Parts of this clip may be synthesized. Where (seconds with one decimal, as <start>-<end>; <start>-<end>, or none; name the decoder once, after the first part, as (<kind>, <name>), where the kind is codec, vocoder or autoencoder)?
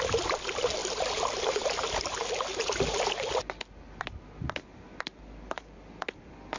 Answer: none